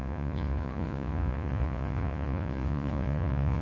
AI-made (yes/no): yes